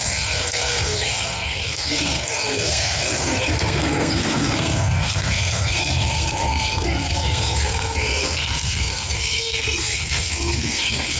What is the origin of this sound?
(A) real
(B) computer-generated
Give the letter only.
B